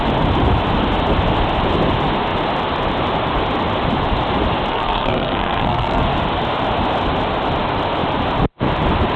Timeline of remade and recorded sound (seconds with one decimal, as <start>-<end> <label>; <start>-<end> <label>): 0.0-4.7 recorded; 4.7-6.0 remade; 6.0-9.2 recorded